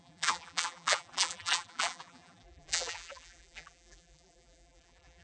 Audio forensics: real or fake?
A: fake